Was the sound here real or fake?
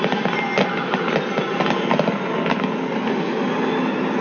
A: real